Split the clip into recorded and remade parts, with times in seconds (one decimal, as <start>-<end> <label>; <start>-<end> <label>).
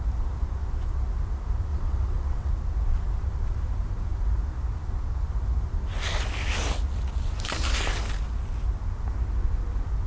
0.0-1.7 recorded; 1.7-2.5 remade; 2.5-10.1 recorded